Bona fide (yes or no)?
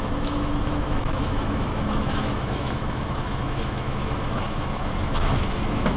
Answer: no